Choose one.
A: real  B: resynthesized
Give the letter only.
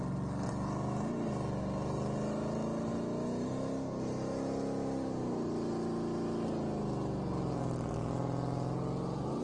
A